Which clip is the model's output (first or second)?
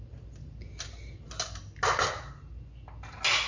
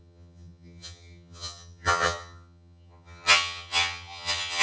second